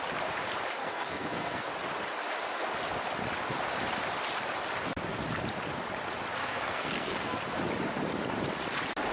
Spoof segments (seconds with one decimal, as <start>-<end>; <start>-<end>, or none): 0.8-1.7; 6.4-7.4